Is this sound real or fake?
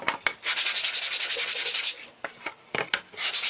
real